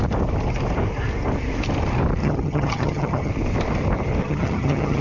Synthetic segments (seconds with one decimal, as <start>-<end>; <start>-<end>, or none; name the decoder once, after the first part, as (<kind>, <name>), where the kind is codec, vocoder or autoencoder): 2.2-3.3 (vocoder, HiFi-GAN); 4.2-5.0